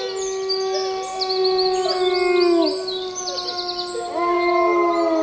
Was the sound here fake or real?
real